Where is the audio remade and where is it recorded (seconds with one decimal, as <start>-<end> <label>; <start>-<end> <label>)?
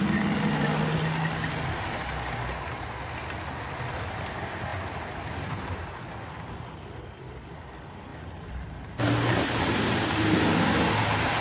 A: 0.0-8.1 recorded; 8.1-10.1 remade; 10.1-11.4 recorded